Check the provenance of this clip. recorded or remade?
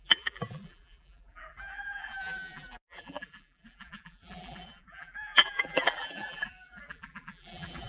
remade